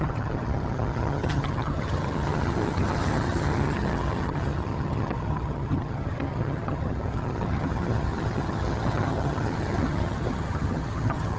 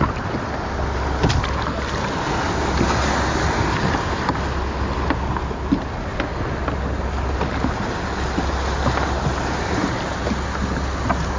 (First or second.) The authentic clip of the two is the second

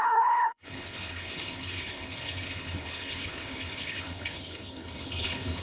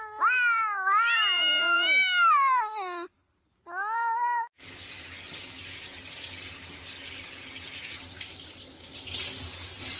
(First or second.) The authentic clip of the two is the second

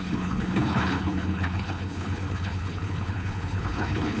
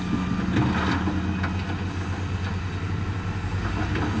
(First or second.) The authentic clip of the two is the second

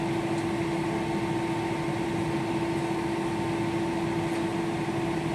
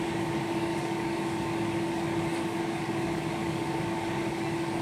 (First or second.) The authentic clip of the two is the first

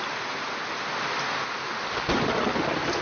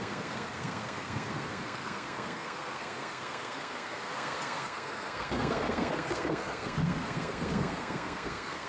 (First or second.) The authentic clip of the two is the first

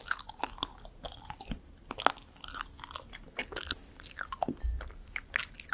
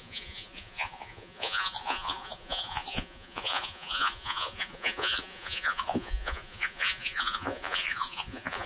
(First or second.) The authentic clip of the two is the first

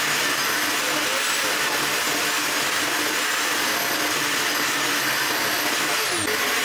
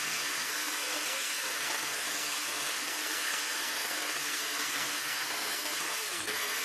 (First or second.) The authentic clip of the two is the first